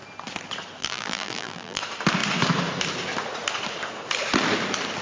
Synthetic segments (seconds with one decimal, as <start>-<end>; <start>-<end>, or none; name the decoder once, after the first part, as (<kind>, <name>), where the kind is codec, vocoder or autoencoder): 0.8-1.8 (vocoder, BigVGAN v2)